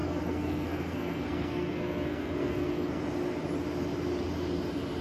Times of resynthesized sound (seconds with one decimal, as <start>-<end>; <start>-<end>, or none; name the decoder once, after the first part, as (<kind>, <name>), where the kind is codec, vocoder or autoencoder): 0.0-3.0 (codec, SNAC)